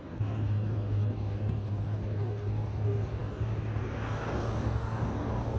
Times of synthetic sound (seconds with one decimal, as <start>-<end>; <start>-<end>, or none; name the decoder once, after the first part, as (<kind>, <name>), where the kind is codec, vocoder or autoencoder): 0.0-5.6 (codec, DAC)